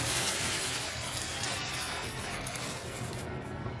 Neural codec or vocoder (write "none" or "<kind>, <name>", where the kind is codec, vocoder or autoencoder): codec, SNAC